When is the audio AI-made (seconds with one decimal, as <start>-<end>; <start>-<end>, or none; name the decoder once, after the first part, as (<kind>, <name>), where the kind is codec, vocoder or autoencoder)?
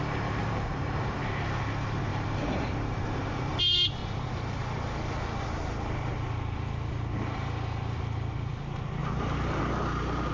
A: 0.4-1.2 (vocoder, BigVGAN v2); 2.1-3.6; 4.0-4.6; 9.0-9.6